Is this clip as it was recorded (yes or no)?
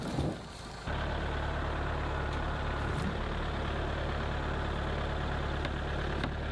yes